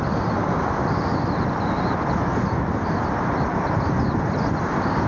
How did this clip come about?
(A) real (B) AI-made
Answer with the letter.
A